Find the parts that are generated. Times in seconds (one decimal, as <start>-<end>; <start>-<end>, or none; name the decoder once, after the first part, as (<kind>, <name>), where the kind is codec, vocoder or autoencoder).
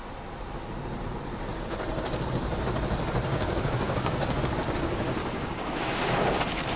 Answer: 3.3-4.4 (codec, DAC); 5.2-5.7